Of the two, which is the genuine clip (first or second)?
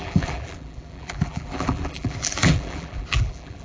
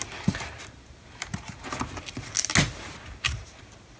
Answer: second